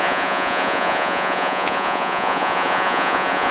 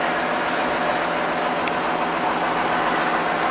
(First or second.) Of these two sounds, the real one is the second